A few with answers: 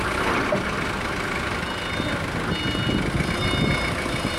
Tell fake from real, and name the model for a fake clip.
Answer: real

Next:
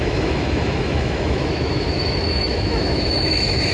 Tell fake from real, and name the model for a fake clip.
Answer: fake, autoencoder, DAC-VAE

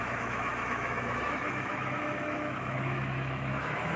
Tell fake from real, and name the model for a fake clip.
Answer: fake, autoencoder, DAC-VAE